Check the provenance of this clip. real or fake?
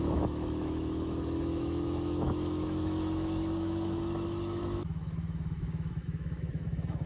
fake